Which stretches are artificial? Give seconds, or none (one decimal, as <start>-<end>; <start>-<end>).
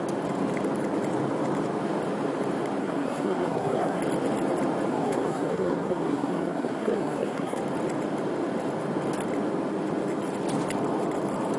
2.8-4.0; 4.9-7.6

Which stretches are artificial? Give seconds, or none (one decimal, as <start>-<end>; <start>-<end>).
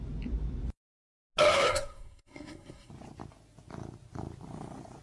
1.5-2.9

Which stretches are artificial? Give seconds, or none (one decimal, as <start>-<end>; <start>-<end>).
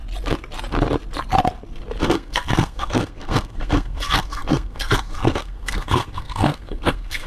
2.0-7.3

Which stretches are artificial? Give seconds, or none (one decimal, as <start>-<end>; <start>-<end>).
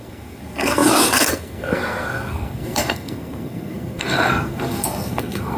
0.0-5.6